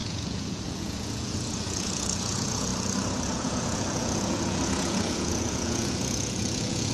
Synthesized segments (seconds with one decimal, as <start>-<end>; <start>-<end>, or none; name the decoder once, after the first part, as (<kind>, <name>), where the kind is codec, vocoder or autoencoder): 0.0-2.7 (vocoder, Vocos); 3.2-6.9